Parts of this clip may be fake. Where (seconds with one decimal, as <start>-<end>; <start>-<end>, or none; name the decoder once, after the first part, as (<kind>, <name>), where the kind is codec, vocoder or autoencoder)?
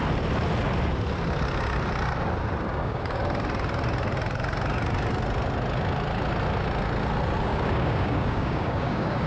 2.7-3.2 (codec, DAC); 7.5-9.3